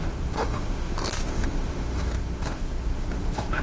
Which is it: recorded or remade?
remade